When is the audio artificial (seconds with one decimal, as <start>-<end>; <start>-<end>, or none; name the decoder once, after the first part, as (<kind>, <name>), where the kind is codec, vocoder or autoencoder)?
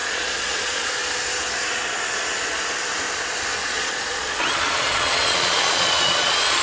0.0-0.9 (vocoder, Vocos); 3.6-6.6